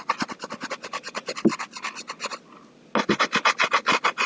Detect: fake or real real